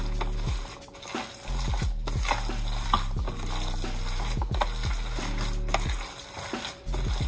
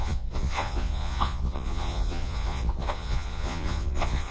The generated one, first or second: second